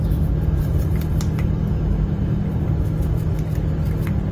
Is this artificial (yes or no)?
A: no